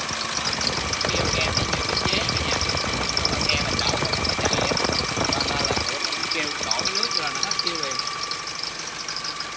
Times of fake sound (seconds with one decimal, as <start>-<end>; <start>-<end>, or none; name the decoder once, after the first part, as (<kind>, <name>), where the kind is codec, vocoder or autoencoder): none